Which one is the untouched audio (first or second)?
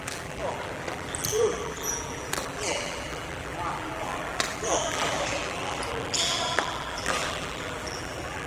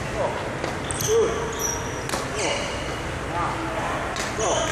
second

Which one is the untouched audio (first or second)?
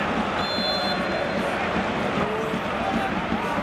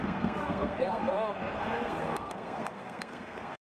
first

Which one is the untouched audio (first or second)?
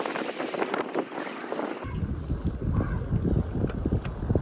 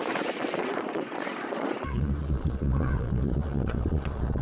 first